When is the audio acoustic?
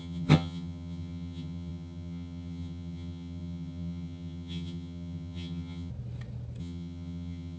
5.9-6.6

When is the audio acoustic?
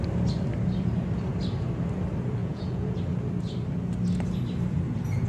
0.0-2.4; 3.0-5.3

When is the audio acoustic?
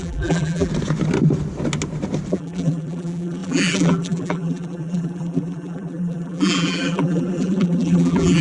0.7-2.3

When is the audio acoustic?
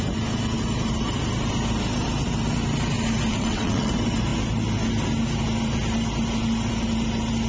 0.0-3.3; 3.9-7.5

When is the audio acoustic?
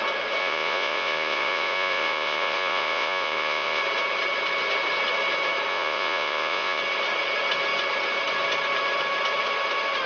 0.0-0.4; 3.8-5.7; 6.8-10.1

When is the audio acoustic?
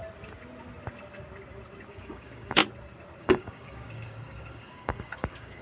0.0-1.9; 2.6-3.2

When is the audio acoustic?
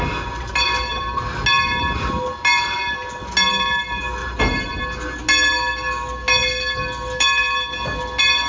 0.0-4.2; 4.8-8.5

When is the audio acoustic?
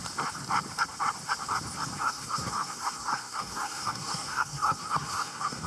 0.0-2.0